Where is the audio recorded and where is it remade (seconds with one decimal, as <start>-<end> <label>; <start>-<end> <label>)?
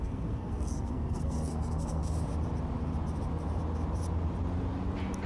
0.0-2.0 remade; 2.0-5.3 recorded